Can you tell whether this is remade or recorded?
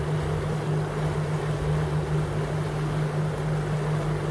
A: recorded